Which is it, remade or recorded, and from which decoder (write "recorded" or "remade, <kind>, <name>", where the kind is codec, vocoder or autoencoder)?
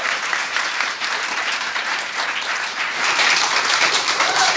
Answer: remade, vocoder, BigVGAN v2